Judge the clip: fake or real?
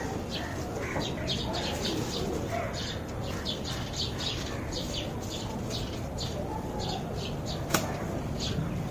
real